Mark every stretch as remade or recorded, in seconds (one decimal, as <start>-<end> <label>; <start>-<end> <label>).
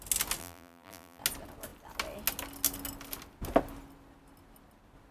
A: 0.0-0.4 recorded; 0.4-1.2 remade; 1.2-5.1 recorded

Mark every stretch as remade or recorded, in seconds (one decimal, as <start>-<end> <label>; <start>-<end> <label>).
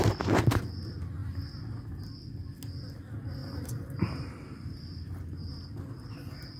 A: 0.0-3.4 recorded; 3.4-5.5 remade; 5.5-6.6 recorded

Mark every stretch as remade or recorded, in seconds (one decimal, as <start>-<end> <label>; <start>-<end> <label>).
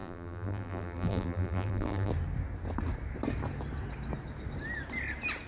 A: 0.0-2.1 remade; 2.1-5.5 recorded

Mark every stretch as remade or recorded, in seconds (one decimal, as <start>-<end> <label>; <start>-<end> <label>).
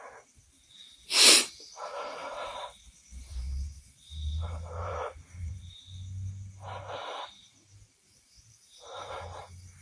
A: 0.0-2.2 recorded; 2.2-5.8 remade; 5.8-7.0 recorded; 7.0-9.2 remade; 9.2-9.8 recorded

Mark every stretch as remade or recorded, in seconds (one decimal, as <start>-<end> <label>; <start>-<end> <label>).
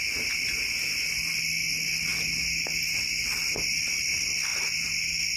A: 0.0-5.4 recorded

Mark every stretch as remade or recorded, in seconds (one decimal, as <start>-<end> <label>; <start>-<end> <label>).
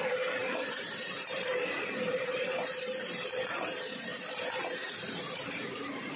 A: 0.0-4.1 remade; 4.1-5.5 recorded; 5.5-6.2 remade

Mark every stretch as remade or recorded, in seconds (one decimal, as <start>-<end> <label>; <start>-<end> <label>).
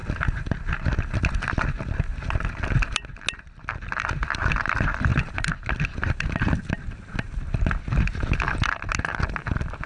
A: 0.0-9.9 recorded